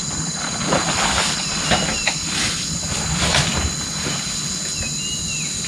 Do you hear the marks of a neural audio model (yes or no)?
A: no